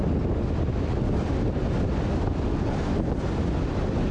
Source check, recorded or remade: recorded